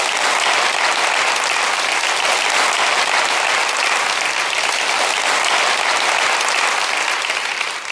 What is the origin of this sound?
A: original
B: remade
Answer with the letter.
B